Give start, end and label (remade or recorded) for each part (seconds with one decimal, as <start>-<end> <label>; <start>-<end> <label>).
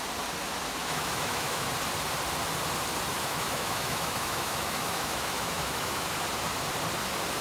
0.0-0.8 recorded; 0.8-1.7 remade; 1.7-3.1 recorded; 3.1-6.1 remade; 6.1-7.4 recorded